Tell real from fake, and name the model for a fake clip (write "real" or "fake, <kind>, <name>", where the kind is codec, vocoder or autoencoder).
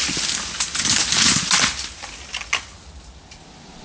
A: real